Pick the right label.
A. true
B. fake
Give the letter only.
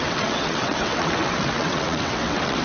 B